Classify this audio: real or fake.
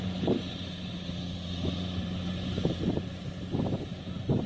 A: fake